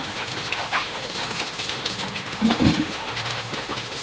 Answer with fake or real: fake